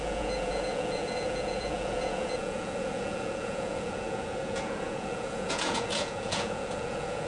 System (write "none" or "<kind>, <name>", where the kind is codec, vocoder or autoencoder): vocoder, Vocos